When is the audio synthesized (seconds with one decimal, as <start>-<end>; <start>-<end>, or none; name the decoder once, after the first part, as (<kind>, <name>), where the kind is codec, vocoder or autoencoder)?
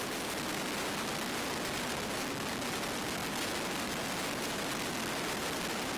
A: none